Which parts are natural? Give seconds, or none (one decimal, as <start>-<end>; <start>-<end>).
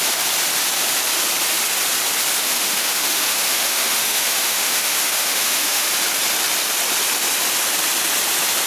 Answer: 0.0-2.4; 5.9-8.7